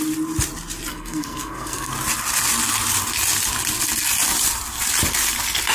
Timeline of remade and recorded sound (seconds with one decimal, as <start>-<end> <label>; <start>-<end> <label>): 0.0-0.9 recorded; 0.9-1.9 remade; 1.9-5.7 recorded